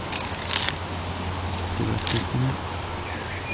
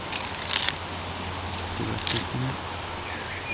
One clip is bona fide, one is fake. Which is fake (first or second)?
second